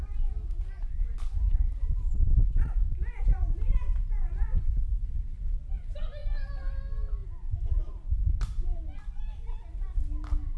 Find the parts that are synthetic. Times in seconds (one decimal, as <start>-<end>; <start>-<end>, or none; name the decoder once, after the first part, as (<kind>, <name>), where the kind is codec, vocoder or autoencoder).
none